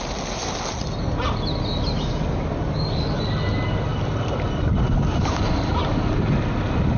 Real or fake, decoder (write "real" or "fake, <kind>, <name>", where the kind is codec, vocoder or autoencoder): real